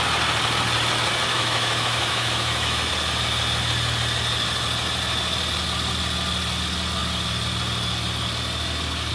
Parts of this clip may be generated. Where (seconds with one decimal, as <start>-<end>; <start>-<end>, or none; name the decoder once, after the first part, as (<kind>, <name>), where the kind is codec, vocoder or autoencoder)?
1.3-2.9 (autoencoder, DAC-VAE)